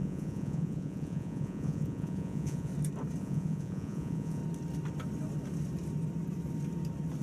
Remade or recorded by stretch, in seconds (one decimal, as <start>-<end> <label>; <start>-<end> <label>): 0.0-2.7 remade; 2.7-3.2 recorded; 3.2-4.4 remade; 4.4-7.2 recorded